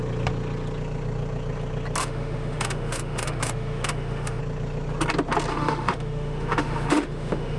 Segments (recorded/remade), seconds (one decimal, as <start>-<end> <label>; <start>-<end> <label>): 0.0-2.0 recorded; 2.0-4.4 remade; 4.4-5.5 recorded; 5.5-7.6 remade